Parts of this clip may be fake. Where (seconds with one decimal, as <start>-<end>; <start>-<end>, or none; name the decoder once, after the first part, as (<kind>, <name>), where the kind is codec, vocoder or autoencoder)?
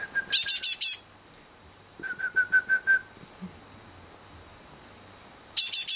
none